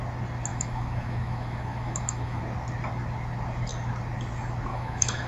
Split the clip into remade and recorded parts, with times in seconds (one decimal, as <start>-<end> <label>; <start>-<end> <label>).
0.0-0.5 recorded; 0.5-2.4 remade; 2.4-4.7 recorded; 4.7-5.3 remade